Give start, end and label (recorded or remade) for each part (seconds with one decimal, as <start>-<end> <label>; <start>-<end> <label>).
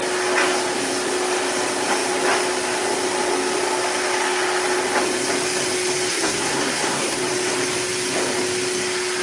0.0-6.1 recorded; 6.1-7.2 remade; 7.2-9.2 recorded